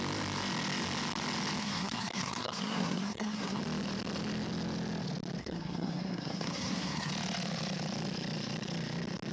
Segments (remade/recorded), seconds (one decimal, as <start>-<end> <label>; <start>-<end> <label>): 0.0-1.6 recorded; 1.6-3.6 remade; 3.6-5.4 recorded; 5.4-7.1 remade; 7.1-9.3 recorded